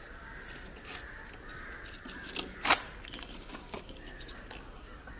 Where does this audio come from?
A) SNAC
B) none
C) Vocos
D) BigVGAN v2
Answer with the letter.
B